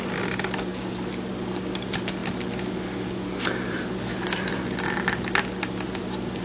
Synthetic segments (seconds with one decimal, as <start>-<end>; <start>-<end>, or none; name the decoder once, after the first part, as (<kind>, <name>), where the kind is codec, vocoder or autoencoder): none